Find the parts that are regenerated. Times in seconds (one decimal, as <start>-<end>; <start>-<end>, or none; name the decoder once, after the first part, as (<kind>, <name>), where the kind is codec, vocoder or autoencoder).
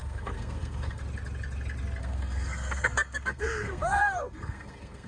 0.0-1.0 (codec, SNAC); 2.0-5.1